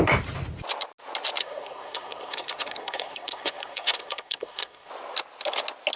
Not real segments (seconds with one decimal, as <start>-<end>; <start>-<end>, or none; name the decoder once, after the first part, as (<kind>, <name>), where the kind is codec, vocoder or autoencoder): 1.4-4.9 (codec, SNAC)